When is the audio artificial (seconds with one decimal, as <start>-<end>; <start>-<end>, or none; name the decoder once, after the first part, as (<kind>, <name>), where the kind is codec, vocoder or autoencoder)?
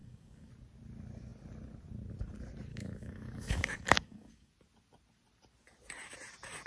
0.0-0.5 (codec, DAC); 2.7-4.5